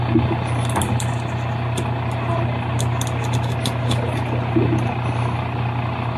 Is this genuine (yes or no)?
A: yes